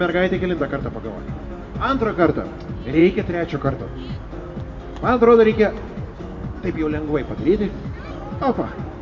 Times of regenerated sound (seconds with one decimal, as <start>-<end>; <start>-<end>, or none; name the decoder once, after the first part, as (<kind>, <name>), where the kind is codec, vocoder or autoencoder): none